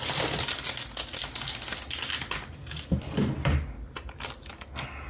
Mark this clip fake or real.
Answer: real